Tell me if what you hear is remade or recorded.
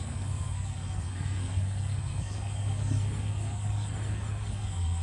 remade